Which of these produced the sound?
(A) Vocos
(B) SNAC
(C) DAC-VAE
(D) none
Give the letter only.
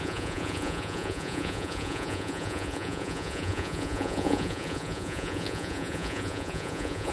A